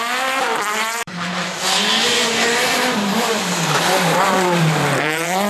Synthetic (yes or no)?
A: yes